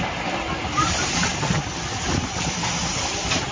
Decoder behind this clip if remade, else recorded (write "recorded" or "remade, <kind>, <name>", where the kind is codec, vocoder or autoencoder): recorded